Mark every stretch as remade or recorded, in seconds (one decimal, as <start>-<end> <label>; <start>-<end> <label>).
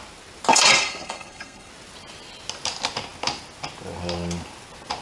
0.0-0.5 recorded; 0.5-1.7 remade; 1.7-5.0 recorded